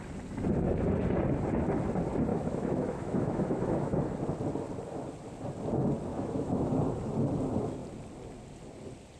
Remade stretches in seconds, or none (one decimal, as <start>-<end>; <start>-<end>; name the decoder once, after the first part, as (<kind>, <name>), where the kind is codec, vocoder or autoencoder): 2.3-4.0 (autoencoder, DAC-VAE); 6.1-6.7